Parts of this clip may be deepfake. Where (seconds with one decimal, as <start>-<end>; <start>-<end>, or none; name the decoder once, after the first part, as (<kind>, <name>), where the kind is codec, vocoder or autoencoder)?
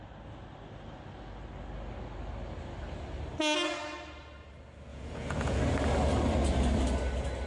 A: 4.9-5.6 (vocoder, Vocos)